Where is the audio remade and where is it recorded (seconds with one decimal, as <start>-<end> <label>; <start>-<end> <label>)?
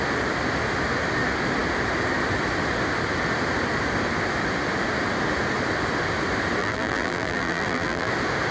0.0-6.6 recorded; 6.6-8.1 remade; 8.1-8.5 recorded